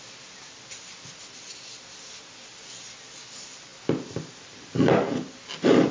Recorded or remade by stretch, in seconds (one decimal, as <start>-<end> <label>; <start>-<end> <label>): 0.0-5.9 recorded